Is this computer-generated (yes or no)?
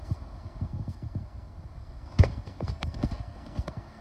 yes